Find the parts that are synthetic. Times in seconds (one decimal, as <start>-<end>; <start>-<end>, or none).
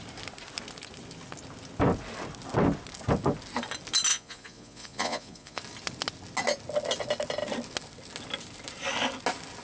4.1-5.6